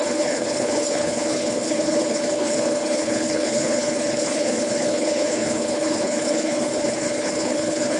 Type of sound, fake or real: fake